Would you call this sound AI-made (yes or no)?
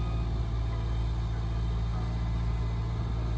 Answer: no